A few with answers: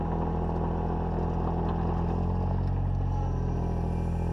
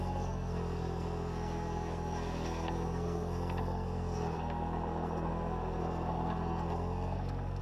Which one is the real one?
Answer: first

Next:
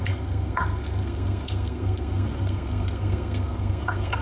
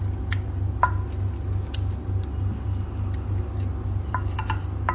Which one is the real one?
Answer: second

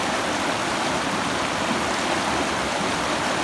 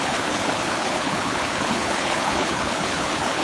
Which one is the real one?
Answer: first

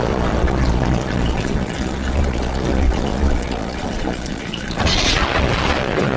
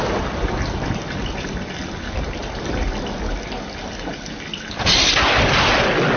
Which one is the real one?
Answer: second